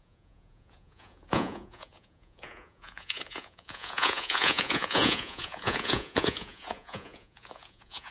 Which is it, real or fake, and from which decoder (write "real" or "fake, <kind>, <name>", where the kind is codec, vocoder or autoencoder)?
fake, vocoder, Vocos